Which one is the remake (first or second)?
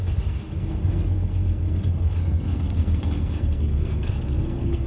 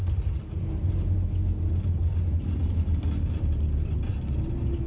first